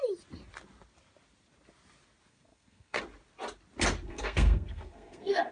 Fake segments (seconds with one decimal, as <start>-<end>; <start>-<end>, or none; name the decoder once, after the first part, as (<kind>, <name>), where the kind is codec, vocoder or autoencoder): 2.3-3.0 (codec, SNAC); 4.1-5.5